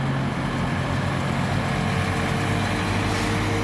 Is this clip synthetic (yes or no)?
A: no